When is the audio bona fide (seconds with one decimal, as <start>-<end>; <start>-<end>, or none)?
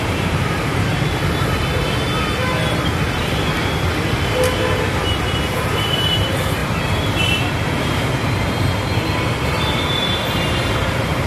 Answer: 0.9-4.7